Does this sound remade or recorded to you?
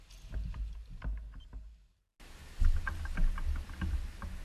recorded